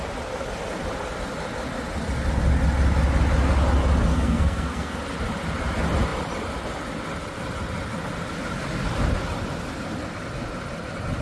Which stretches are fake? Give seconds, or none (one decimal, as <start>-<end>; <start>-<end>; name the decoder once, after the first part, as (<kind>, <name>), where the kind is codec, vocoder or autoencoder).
4.1-5.0 (codec, SNAC)